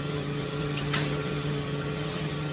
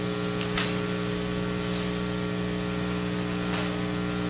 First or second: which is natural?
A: second